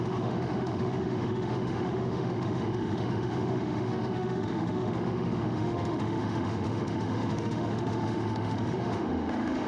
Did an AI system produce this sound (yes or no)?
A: yes